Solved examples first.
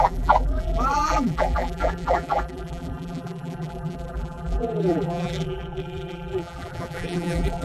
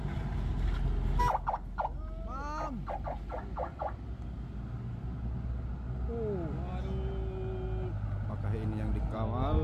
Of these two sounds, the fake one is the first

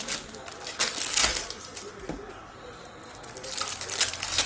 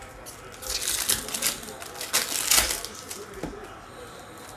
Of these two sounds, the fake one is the first